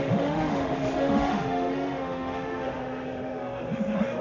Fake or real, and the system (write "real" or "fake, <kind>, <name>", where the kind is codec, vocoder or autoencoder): fake, autoencoder, DAC-VAE